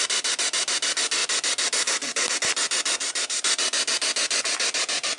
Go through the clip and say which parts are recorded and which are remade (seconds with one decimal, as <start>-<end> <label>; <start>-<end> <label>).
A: 0.0-3.0 recorded; 3.0-3.9 remade; 3.9-5.2 recorded

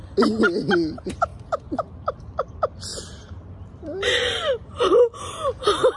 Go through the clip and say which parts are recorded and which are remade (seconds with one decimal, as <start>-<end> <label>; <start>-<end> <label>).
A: 0.0-1.3 recorded; 1.3-2.5 remade; 2.5-2.9 recorded; 2.9-5.2 remade; 5.2-6.0 recorded

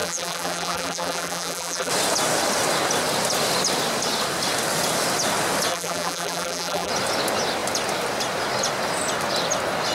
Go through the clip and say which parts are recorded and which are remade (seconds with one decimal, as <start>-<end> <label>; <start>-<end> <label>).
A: 0.0-1.9 remade; 1.9-5.7 recorded; 5.7-6.9 remade; 6.9-9.9 recorded

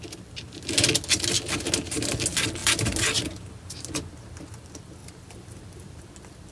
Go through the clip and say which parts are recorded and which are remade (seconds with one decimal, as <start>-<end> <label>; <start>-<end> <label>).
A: 0.0-2.6 recorded; 2.6-3.7 remade; 3.7-5.0 recorded; 5.0-6.0 remade; 6.0-6.5 recorded

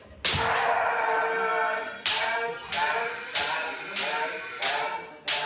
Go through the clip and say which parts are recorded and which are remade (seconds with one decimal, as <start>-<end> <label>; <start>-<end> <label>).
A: 0.0-1.5 recorded; 1.5-4.8 remade; 4.8-5.5 recorded

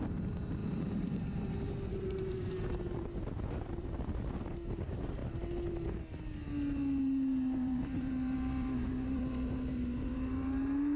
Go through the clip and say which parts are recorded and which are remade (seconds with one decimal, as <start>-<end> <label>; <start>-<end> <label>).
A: 0.0-5.2 remade; 5.2-7.0 recorded; 7.0-11.0 remade

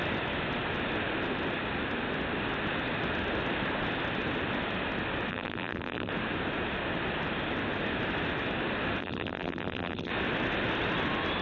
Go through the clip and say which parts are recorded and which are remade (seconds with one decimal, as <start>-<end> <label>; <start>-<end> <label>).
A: 0.0-5.3 recorded; 5.3-6.1 remade; 6.1-9.0 recorded; 9.0-10.1 remade; 10.1-11.4 recorded